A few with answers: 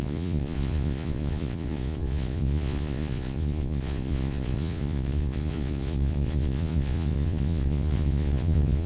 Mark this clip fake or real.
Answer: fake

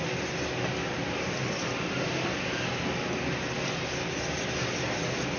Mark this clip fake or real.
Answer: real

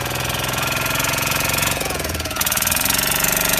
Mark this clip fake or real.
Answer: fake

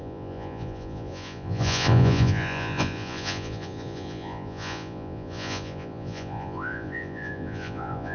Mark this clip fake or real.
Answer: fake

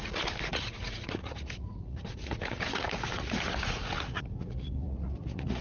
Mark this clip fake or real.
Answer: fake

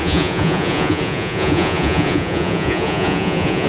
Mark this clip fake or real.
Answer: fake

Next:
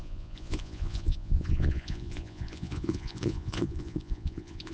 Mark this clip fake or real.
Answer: fake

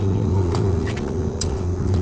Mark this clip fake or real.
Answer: fake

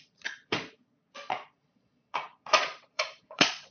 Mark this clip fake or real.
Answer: fake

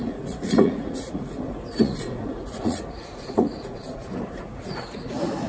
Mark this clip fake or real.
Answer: fake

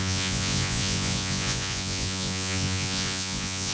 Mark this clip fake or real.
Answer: fake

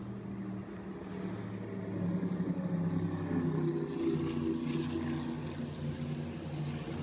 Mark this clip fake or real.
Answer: real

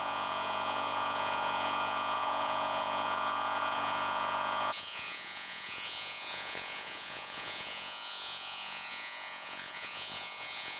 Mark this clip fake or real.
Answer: fake